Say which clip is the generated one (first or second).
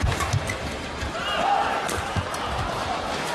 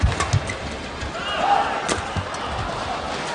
first